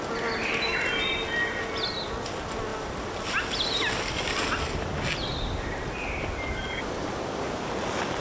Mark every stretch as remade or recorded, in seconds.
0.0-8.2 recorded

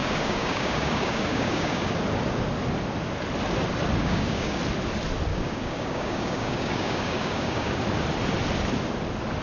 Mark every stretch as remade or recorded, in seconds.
0.0-1.9 remade; 1.9-4.0 recorded; 4.0-4.6 remade; 4.6-5.3 recorded; 5.3-7.8 remade; 7.8-9.4 recorded

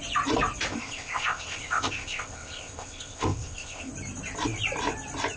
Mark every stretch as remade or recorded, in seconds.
0.0-0.7 recorded; 0.7-3.9 remade; 3.9-5.4 recorded

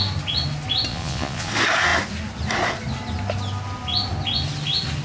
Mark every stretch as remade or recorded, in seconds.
0.0-0.9 recorded; 0.9-1.5 remade; 1.5-5.0 recorded

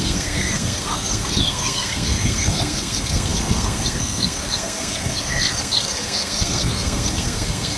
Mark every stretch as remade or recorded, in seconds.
0.0-7.8 remade

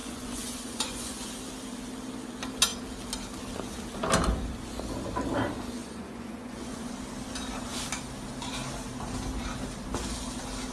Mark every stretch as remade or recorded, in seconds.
0.0-1.3 remade; 1.3-5.8 recorded; 5.8-6.9 remade; 6.9-10.7 recorded

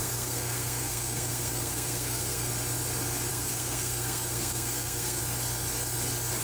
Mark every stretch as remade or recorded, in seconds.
0.0-2.5 remade; 2.5-3.3 recorded; 3.3-5.2 remade; 5.2-6.4 recorded

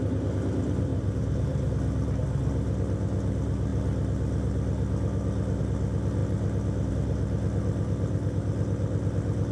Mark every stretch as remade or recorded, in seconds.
0.0-0.9 recorded; 0.9-1.7 remade; 1.7-9.5 recorded